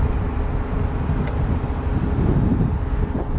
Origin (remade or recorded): recorded